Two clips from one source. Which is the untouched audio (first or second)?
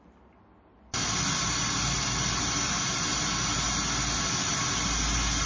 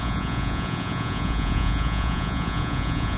first